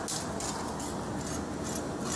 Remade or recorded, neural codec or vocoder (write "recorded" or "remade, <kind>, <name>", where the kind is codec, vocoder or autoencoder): recorded